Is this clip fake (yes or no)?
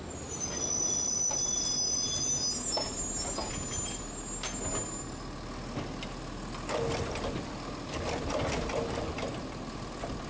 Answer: no